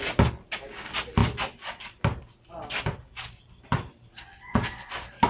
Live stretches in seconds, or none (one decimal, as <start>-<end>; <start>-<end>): 0.0-5.3

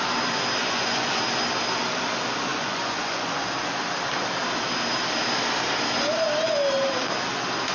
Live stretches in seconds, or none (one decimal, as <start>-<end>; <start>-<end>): 0.0-0.6; 1.2-2.5; 3.5-7.7

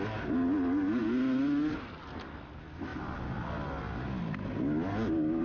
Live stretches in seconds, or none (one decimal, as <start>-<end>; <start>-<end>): 0.0-5.4